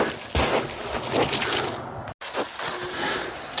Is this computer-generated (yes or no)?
no